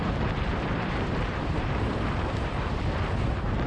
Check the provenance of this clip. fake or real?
fake